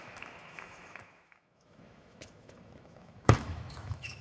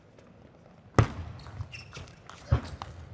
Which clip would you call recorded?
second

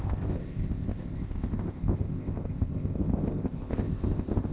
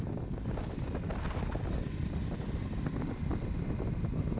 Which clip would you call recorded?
second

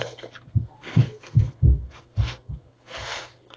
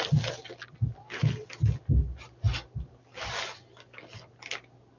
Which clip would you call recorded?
second